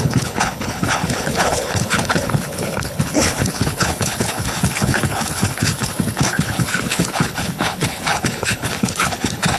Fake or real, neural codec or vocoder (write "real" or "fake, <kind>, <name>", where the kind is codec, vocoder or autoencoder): fake, codec, HILCodec